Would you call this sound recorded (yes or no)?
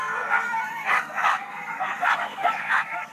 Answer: no